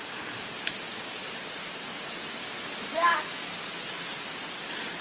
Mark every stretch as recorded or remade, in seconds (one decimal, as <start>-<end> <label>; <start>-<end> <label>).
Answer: 0.0-5.0 recorded